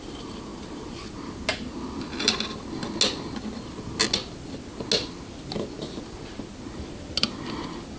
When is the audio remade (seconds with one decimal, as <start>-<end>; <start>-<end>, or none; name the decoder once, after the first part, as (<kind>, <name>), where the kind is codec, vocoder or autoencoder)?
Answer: none